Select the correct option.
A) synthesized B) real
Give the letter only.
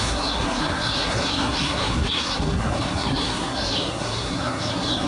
A